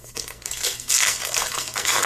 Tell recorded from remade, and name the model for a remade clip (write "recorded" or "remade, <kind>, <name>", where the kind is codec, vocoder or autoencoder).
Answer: remade, codec, SNAC